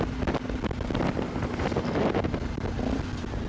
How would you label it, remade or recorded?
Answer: recorded